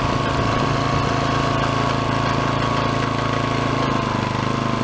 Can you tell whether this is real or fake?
real